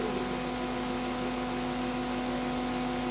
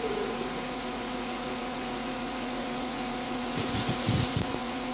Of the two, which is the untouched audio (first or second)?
first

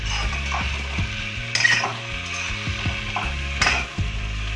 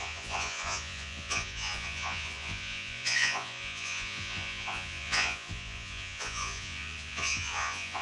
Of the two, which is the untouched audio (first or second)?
first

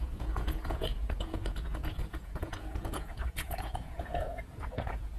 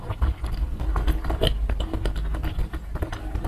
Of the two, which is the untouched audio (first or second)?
second